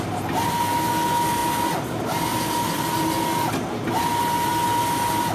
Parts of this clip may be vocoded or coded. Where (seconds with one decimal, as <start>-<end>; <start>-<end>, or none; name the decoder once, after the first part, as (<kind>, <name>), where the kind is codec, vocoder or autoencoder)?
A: none